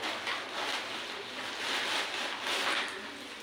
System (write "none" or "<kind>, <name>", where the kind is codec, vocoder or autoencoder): none